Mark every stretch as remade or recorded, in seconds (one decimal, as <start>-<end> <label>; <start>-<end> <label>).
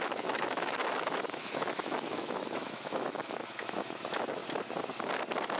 0.0-4.4 remade; 4.4-5.6 recorded